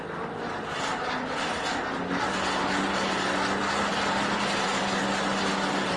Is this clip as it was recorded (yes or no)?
yes